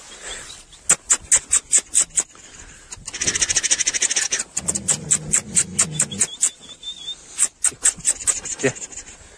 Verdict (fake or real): real